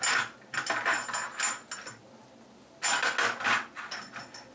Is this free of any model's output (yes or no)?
yes